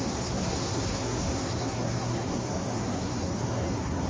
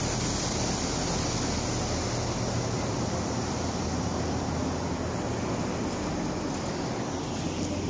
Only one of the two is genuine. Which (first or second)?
second